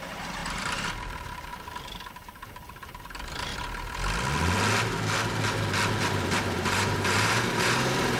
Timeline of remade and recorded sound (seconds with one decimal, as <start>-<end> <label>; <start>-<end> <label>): 0.0-1.5 remade; 1.5-2.1 recorded; 2.1-3.5 remade; 3.5-6.0 recorded; 6.0-8.2 remade